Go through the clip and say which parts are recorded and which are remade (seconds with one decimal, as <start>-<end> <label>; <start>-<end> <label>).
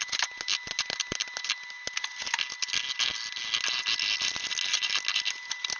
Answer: 0.0-5.8 recorded